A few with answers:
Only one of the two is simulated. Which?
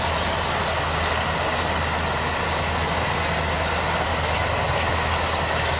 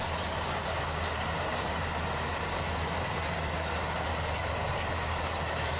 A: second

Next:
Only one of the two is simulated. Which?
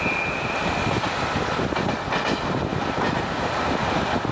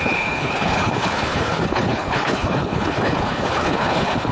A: second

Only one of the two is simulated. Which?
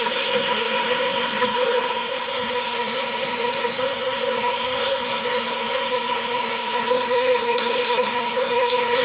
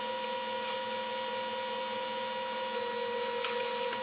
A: first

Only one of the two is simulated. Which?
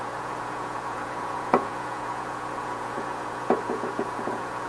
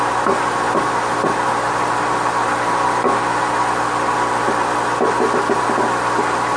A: first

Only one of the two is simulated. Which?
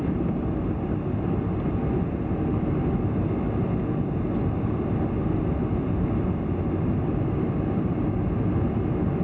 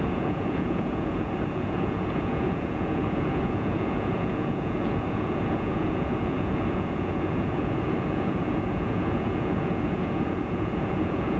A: second